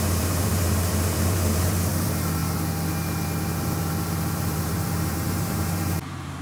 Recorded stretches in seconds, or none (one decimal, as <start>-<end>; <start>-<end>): 2.4-4.3